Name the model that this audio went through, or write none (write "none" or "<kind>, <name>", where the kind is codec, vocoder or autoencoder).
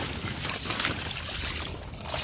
none